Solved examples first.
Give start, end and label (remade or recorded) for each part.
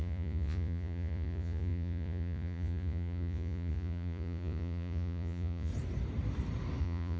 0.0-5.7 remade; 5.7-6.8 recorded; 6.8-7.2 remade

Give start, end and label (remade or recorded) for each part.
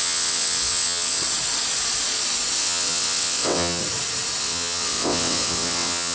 0.0-1.2 remade; 1.2-2.6 recorded; 2.6-3.8 remade; 3.8-4.4 recorded; 4.4-6.1 remade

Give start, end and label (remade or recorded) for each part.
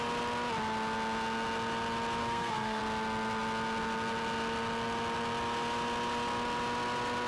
0.0-2.2 recorded; 2.2-2.8 remade; 2.8-7.3 recorded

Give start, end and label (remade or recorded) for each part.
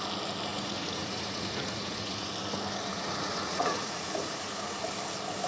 0.0-0.5 recorded; 0.5-2.3 remade; 2.3-2.9 recorded; 2.9-4.8 remade; 4.8-5.5 recorded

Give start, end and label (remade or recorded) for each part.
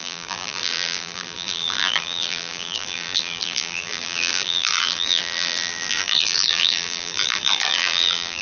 0.0-8.4 remade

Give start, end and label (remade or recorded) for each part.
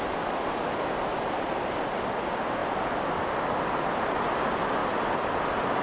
0.0-5.8 recorded